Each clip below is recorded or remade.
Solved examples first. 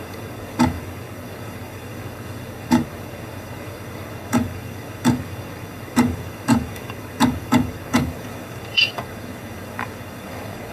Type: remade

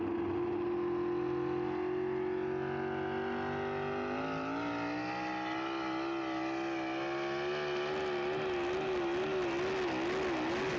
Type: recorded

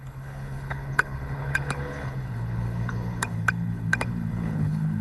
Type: remade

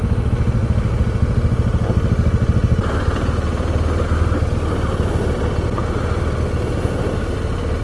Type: recorded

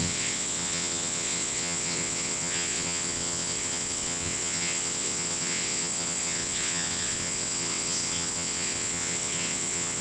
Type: remade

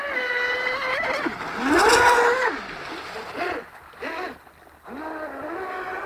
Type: recorded